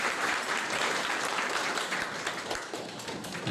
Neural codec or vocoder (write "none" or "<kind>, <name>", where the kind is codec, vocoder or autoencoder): vocoder, BigVGAN v2